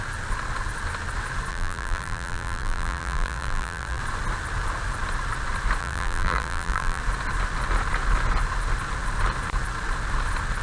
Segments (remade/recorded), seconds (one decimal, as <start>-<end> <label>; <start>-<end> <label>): 0.0-1.5 recorded; 1.5-4.0 remade; 4.0-5.8 recorded; 5.8-7.0 remade; 7.0-10.6 recorded